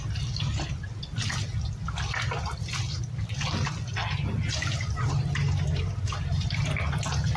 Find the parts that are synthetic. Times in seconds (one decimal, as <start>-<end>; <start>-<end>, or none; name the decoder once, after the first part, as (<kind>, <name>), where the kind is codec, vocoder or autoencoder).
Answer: 4.7-6.7 (vocoder, BigVGAN v2)